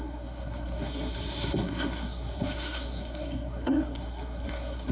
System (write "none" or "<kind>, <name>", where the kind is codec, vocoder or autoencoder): codec, SNAC